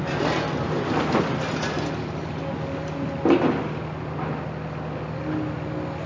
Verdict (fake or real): real